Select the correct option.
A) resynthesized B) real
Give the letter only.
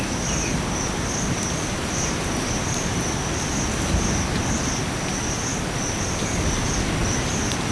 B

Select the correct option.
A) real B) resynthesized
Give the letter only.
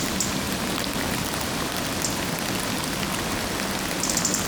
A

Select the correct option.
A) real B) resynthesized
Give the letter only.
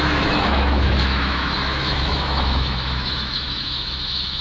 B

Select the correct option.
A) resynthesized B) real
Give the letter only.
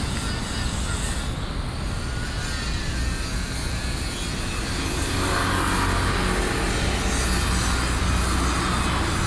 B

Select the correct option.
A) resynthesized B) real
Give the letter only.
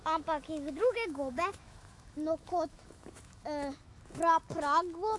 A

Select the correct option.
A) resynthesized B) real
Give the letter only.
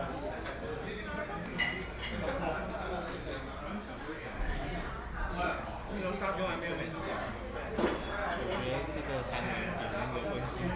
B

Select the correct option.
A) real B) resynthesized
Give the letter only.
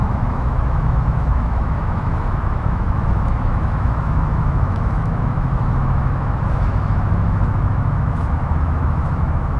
B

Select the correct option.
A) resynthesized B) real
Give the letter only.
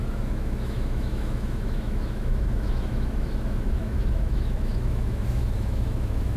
A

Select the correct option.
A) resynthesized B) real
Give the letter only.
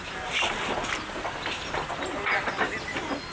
B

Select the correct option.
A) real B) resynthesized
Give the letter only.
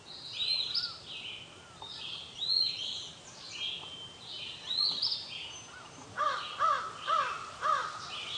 A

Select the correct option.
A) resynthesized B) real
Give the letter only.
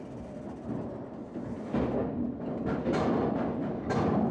B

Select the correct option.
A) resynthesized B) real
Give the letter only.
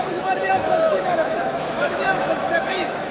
A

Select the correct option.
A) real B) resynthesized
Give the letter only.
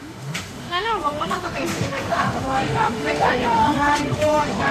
B